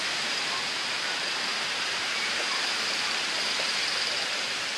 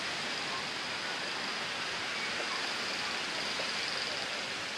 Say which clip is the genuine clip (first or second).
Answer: second